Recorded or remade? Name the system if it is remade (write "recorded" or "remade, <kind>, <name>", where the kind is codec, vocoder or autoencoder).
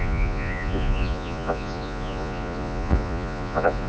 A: remade, vocoder, Vocos